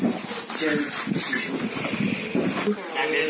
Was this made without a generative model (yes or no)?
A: yes